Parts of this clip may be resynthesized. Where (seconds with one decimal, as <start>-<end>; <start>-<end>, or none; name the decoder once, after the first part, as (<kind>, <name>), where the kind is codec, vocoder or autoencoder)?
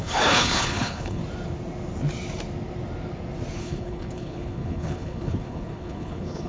0.0-1.2 (codec, HILCodec); 3.6-6.5